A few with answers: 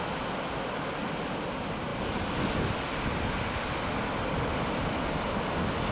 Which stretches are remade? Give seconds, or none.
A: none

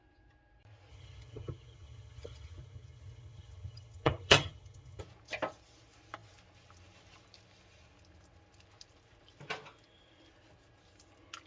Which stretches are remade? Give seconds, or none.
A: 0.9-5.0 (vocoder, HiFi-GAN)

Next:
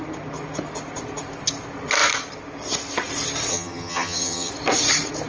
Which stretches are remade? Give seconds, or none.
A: 3.5-4.5 (vocoder, HiFi-GAN)

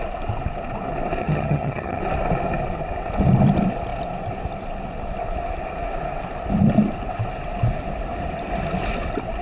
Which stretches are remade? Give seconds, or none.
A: 1.2-2.0 (vocoder, HiFi-GAN)

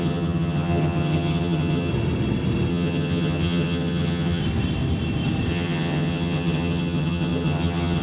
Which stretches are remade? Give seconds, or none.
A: 0.0-1.9 (vocoder, HiFi-GAN); 2.7-4.4; 5.5-8.0